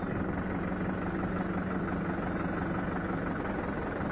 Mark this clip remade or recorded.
recorded